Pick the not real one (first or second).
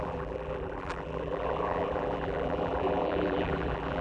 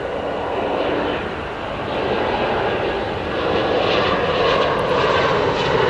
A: first